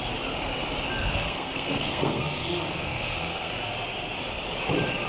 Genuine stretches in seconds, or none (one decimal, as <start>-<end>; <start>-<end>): 0.0-1.0; 3.5-5.1